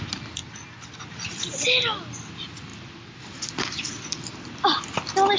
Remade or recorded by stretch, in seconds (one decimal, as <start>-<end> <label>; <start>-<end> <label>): 0.0-5.4 recorded